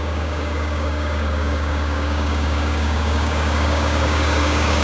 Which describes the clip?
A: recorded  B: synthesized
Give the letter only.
B